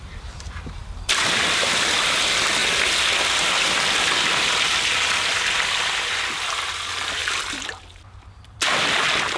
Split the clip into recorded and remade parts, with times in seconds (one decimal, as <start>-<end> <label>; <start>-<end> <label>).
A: 0.0-2.6 remade; 2.6-3.8 recorded; 3.8-9.4 remade